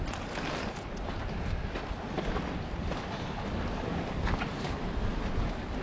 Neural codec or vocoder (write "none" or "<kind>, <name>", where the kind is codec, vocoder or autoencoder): none